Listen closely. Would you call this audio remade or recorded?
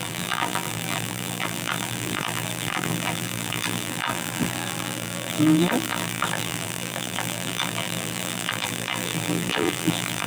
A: remade